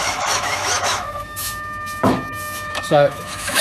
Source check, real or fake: fake